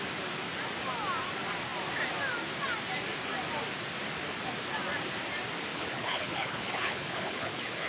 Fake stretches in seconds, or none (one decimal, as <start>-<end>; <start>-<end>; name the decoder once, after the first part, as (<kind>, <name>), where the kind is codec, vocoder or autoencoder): 5.7-7.9 (codec, HILCodec)